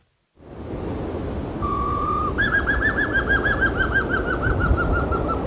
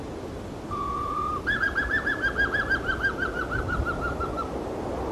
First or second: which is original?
first